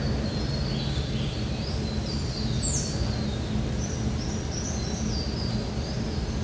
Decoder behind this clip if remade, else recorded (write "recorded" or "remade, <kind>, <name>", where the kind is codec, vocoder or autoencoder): recorded